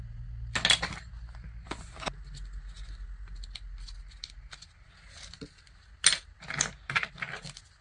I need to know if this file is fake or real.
real